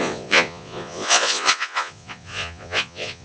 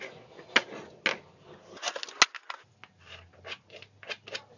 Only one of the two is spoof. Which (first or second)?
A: first